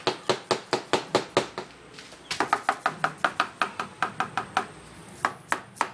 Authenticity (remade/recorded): recorded